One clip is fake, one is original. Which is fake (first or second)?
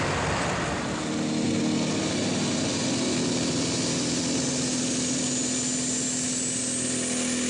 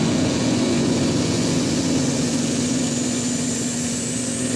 second